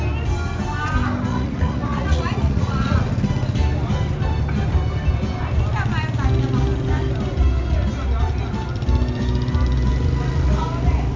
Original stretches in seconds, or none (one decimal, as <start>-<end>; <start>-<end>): 0.0-1.3; 3.0-11.2